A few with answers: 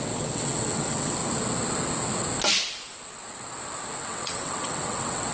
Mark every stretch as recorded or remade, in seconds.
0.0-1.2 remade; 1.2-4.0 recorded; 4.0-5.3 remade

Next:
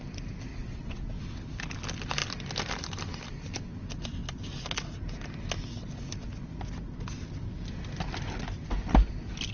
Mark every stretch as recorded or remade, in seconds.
0.0-0.5 recorded; 0.5-1.1 remade; 1.1-9.5 recorded

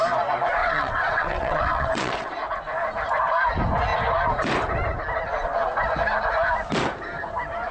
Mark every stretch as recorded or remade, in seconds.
0.0-0.6 recorded; 0.6-2.3 remade; 2.3-7.7 recorded

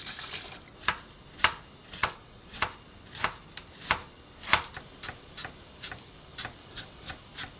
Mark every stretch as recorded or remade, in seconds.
0.0-2.0 recorded; 2.0-2.6 remade; 2.6-6.6 recorded; 6.6-7.1 remade; 7.1-7.6 recorded